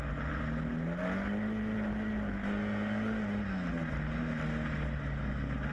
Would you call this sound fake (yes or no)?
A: no